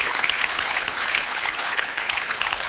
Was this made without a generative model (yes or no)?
no